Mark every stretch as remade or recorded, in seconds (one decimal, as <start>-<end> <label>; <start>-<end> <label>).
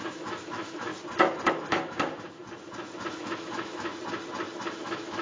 0.0-0.9 remade; 0.9-1.5 recorded; 1.5-2.4 remade; 2.4-3.2 recorded; 3.2-3.9 remade; 3.9-4.7 recorded; 4.7-5.2 remade